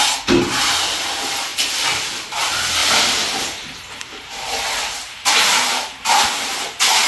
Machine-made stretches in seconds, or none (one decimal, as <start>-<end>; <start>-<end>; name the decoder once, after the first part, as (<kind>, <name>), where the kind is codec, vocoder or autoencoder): 2.8-4.8 (vocoder, BigVGAN v2)